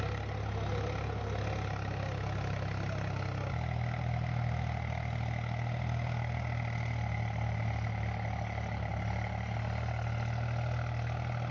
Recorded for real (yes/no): yes